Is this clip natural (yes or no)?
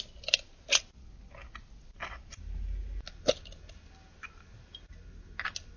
yes